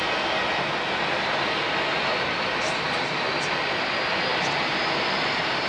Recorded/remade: recorded